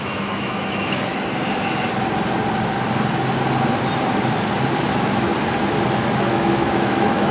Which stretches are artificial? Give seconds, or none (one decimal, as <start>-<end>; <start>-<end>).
0.0-1.1; 4.8-5.3; 6.0-7.3